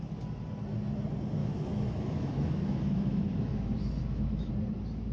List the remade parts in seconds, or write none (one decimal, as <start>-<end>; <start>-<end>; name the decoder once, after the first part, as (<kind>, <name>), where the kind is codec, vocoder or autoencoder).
1.4-4.5 (autoencoder, DAC-VAE)